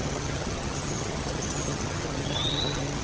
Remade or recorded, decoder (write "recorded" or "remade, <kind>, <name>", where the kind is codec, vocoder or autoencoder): remade, vocoder, HiFi-GAN